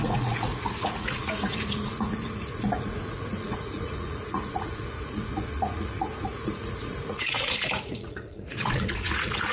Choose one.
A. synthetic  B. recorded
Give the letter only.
A